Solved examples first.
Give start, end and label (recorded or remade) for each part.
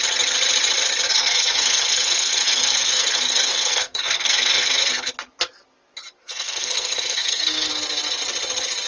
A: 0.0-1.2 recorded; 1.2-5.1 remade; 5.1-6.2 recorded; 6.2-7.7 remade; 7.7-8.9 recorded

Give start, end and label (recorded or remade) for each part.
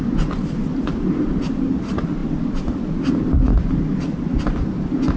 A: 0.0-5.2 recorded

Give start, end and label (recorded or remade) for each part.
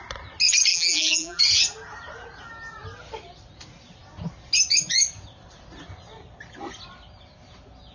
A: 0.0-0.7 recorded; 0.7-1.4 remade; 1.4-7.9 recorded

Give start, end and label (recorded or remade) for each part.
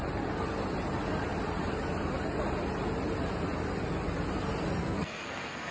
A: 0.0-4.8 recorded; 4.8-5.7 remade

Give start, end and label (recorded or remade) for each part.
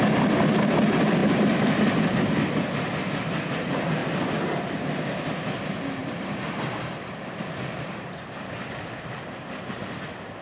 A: 0.0-6.0 recorded; 6.0-6.8 remade; 6.8-10.4 recorded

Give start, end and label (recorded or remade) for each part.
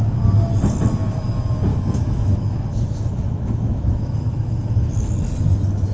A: 0.0-1.7 recorded; 1.7-4.9 remade; 4.9-5.9 recorded